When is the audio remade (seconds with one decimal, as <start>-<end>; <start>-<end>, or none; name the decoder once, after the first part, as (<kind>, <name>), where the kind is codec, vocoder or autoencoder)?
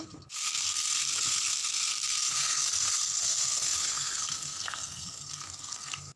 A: 0.0-6.2 (codec, SNAC)